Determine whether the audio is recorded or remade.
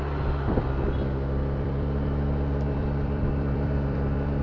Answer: remade